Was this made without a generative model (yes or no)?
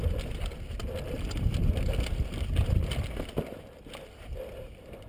yes